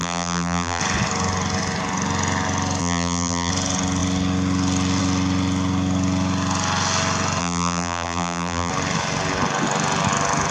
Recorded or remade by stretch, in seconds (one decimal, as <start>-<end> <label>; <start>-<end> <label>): 0.0-0.8 remade; 0.8-2.8 recorded; 2.8-3.5 remade; 3.5-7.4 recorded; 7.4-8.7 remade; 8.7-10.5 recorded